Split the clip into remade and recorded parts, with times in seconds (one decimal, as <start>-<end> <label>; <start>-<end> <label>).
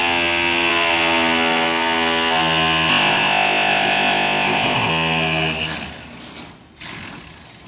0.0-2.9 recorded; 2.9-4.9 remade; 4.9-7.7 recorded